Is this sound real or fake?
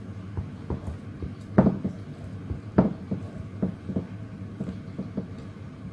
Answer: real